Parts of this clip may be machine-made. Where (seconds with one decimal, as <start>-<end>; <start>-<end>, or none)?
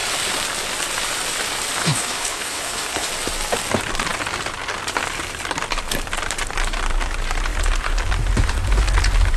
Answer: 1.8-3.1